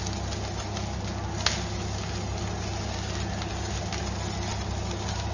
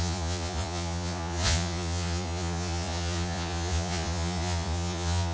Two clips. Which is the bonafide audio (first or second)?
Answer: first